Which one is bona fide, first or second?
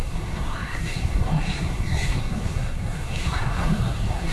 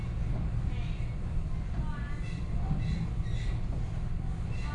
second